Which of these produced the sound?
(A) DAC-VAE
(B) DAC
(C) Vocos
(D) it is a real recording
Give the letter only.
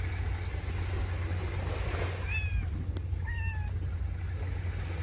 D